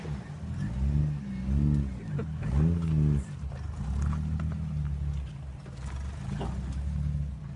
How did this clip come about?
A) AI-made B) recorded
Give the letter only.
B